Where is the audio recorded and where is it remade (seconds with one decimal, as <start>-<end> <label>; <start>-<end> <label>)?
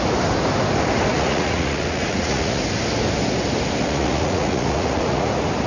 0.0-1.1 recorded; 1.1-2.6 remade; 2.6-3.8 recorded; 3.8-5.3 remade; 5.3-5.7 recorded